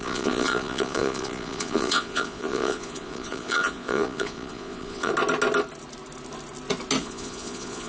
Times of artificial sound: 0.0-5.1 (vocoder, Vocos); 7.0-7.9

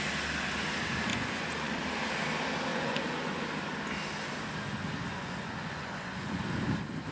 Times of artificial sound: 1.1-1.8 (vocoder, Vocos); 2.7-3.3; 5.1-6.4

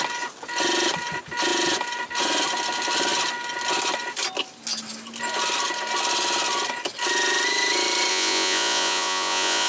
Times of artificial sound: 8.1-9.7 (vocoder, Vocos)